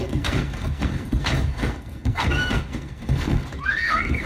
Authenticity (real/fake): fake